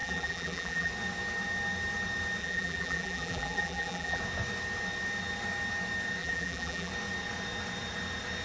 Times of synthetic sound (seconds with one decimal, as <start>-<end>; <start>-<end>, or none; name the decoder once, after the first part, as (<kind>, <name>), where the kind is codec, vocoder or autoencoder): 0.0-0.9 (vocoder, BigVGAN v2); 2.4-4.2; 6.2-6.9